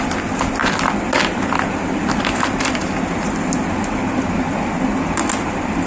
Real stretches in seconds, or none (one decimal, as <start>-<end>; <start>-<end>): 0.0-5.9

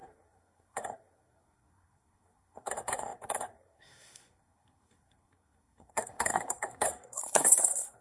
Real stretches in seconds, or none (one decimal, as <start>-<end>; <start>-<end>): none

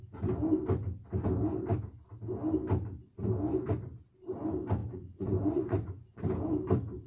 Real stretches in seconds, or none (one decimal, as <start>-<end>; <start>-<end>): 0.0-4.8; 6.2-7.1

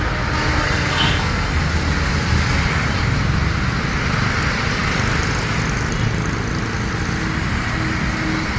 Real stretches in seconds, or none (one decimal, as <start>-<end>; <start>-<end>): 0.0-0.5; 1.6-8.6

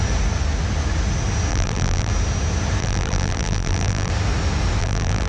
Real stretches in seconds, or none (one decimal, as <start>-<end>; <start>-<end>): 0.0-1.5; 2.1-2.8; 4.1-4.8

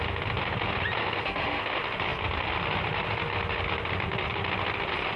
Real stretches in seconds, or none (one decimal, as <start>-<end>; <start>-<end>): 0.0-1.0; 1.7-5.2

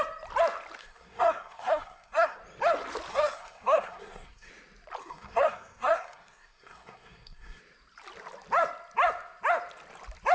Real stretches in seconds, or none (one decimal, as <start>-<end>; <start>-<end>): 0.0-0.8; 2.4-3.1; 4.5-5.0; 7.6-10.3